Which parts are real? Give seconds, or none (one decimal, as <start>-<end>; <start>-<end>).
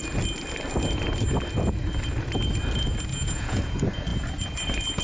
0.0-3.1; 3.6-5.0